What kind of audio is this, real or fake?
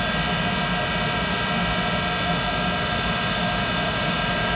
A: real